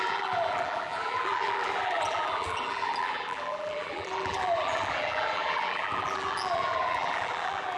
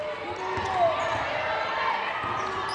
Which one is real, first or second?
second